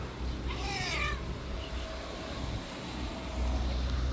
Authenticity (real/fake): real